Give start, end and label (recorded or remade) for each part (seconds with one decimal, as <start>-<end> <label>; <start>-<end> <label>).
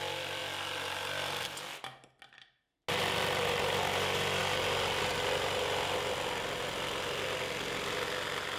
0.0-8.6 recorded